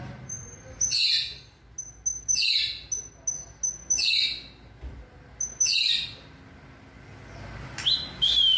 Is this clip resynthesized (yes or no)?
no